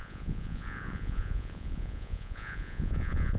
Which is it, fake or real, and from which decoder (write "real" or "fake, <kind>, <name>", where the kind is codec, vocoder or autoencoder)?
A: fake, vocoder, Vocos